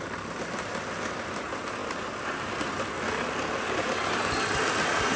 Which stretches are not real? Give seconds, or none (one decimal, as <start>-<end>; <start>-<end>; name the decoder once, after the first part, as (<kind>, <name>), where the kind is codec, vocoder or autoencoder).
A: none